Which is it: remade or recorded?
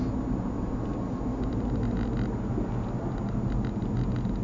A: recorded